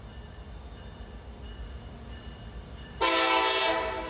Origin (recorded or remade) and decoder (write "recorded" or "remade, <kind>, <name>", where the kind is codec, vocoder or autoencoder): recorded